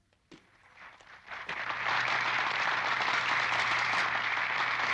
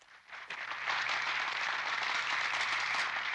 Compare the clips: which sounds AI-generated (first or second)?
first